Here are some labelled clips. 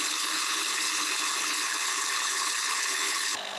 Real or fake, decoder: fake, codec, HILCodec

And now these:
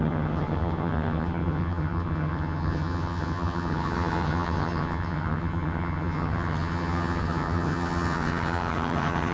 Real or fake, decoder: fake, vocoder, HiFi-GAN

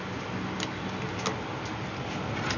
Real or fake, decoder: real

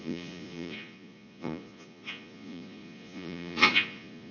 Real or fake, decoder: fake, vocoder, Vocos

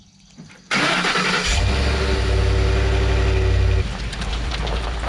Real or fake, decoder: real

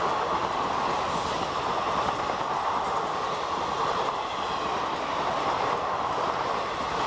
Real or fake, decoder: real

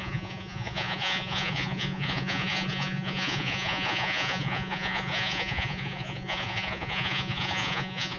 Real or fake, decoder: fake, vocoder, Vocos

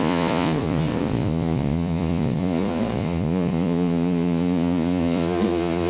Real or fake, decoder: fake, vocoder, Vocos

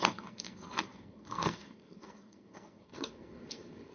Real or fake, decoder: fake, codec, SNAC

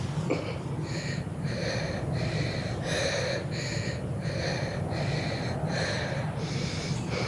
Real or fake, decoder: real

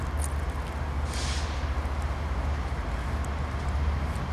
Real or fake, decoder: real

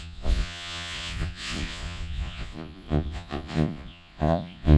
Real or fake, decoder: fake, vocoder, Vocos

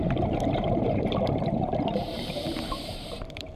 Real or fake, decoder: fake, vocoder, BigVGAN v2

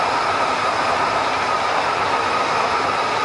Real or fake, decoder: real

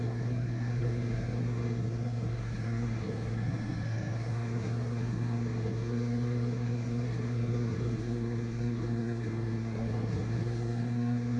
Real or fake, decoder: fake, codec, SNAC